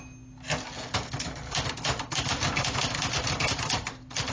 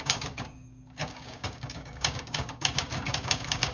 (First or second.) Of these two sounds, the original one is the first